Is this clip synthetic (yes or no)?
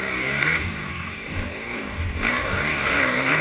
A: yes